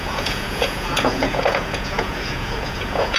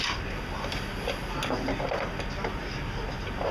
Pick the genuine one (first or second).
second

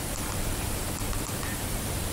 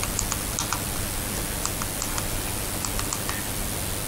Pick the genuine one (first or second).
second